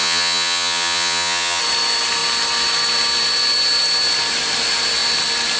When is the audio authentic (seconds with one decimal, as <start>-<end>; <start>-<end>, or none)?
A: 1.6-5.6